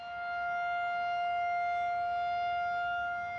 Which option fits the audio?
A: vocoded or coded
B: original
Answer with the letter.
B